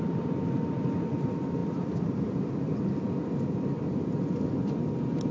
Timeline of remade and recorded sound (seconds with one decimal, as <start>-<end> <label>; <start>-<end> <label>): 0.0-5.3 recorded

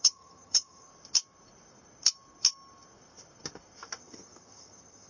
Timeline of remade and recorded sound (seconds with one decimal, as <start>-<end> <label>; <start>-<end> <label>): 0.0-0.9 remade; 0.9-4.0 recorded; 4.0-5.1 remade

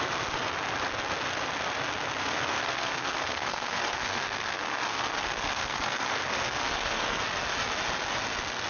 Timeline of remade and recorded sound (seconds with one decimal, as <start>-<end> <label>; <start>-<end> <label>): 0.0-2.2 recorded; 2.2-7.2 remade; 7.2-8.7 recorded

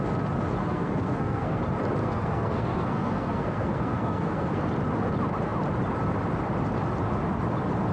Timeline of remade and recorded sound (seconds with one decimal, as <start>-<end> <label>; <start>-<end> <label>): 0.0-0.6 recorded; 0.6-1.6 remade; 1.6-2.0 recorded; 2.0-4.6 remade; 4.6-7.9 recorded

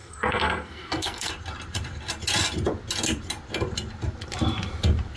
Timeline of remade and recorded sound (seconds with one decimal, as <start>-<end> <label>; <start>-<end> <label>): 0.0-1.3 remade; 1.3-5.2 recorded

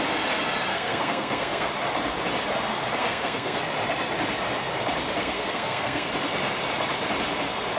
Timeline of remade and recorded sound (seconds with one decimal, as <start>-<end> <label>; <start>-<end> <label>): 0.0-0.7 recorded; 0.7-1.7 remade; 1.7-3.0 recorded; 3.0-3.6 remade; 3.6-5.2 recorded; 5.2-6.1 remade; 6.1-7.8 recorded